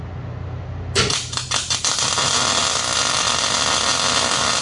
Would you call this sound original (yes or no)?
yes